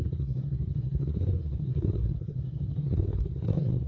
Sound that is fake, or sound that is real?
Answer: fake